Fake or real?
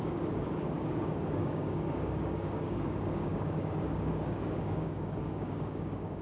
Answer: fake